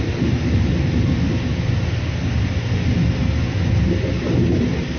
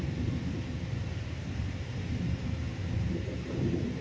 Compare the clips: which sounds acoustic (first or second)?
first